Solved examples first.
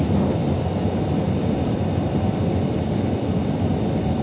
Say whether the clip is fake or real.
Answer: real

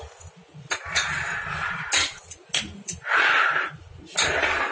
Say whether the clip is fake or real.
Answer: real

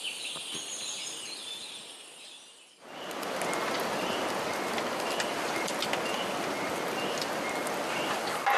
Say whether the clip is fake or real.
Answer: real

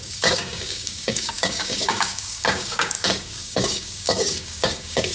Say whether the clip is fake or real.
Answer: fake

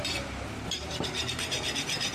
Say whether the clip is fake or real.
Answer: fake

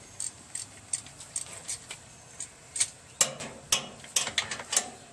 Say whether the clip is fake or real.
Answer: real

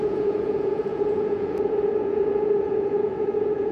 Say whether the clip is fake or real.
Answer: fake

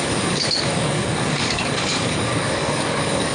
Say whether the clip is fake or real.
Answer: fake